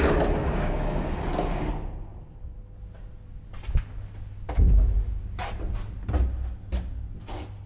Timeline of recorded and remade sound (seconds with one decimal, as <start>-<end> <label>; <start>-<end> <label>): 0.0-0.4 recorded; 0.4-1.7 remade; 1.7-7.7 recorded